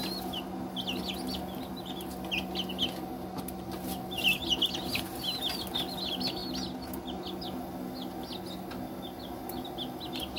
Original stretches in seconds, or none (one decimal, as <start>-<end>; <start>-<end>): 0.0-10.4